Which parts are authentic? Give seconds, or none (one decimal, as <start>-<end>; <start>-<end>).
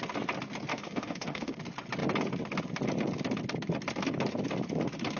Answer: 0.0-0.7; 1.6-5.2